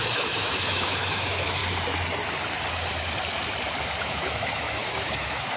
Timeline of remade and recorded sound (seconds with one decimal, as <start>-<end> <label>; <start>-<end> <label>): 0.0-1.6 remade; 1.6-4.0 recorded; 4.0-5.6 remade